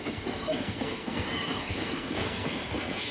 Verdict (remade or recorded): remade